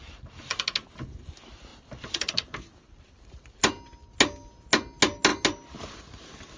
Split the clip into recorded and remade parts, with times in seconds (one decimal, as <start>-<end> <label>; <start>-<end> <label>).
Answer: 0.0-1.7 recorded; 1.7-3.6 remade; 3.6-6.6 recorded